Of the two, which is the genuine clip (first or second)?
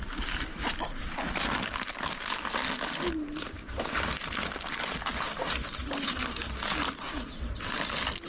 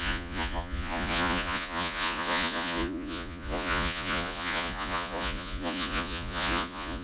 first